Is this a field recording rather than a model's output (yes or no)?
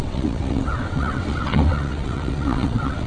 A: no